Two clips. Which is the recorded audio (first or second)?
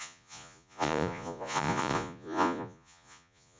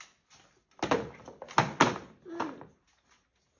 second